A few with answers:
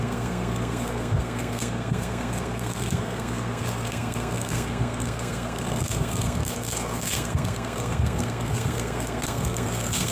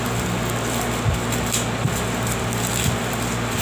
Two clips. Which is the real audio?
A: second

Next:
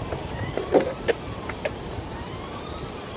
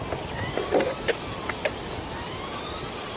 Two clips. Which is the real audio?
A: second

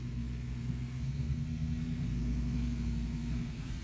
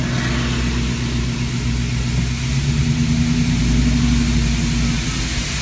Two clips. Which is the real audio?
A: second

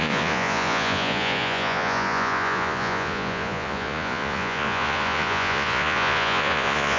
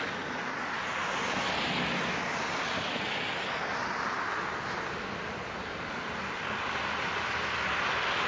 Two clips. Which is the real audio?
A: second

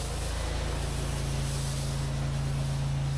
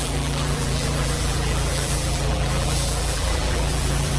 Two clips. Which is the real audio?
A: first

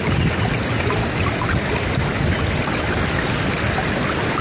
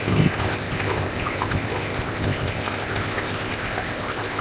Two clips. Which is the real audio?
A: first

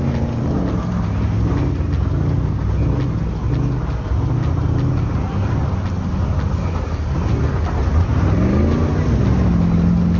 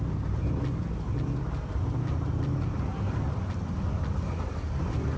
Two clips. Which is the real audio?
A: first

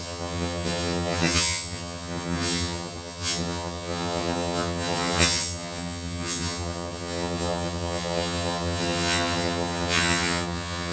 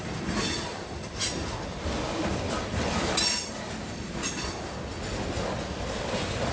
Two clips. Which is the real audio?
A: second